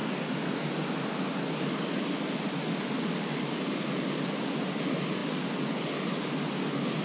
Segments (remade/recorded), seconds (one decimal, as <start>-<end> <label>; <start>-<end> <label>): 0.0-7.0 recorded